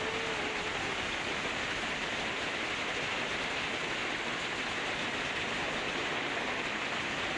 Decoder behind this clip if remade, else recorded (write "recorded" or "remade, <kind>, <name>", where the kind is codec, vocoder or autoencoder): recorded